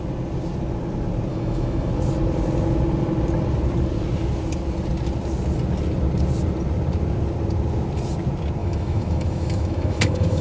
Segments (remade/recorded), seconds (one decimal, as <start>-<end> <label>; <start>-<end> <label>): 0.0-1.3 recorded; 1.3-1.9 remade; 1.9-8.6 recorded; 8.6-10.4 remade